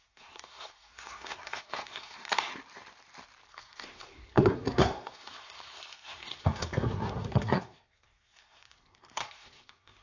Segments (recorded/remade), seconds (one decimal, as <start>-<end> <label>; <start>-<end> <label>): 0.0-2.5 remade; 2.5-3.5 recorded; 3.5-10.0 remade